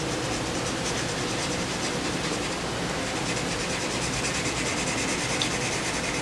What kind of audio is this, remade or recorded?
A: recorded